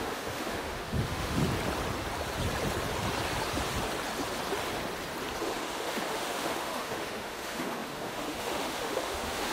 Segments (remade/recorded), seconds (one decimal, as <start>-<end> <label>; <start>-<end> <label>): 0.0-1.4 remade; 1.4-5.4 recorded; 5.4-9.5 remade